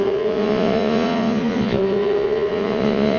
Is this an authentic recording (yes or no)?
no